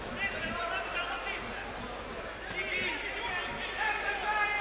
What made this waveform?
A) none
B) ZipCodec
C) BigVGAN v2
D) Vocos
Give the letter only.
A